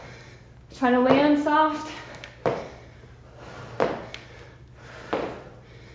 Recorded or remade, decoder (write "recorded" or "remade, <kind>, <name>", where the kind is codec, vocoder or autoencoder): recorded